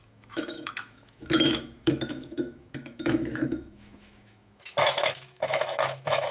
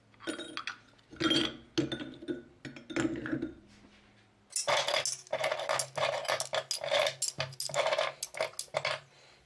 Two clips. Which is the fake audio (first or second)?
first